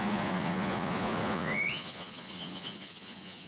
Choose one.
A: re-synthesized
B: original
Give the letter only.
A